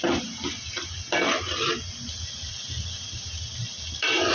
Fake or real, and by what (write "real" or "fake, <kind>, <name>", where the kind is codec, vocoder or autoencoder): fake, vocoder, BigVGAN v2